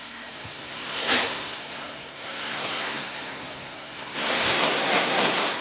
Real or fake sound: fake